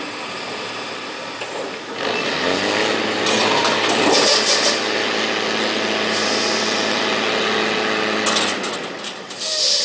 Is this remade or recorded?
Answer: recorded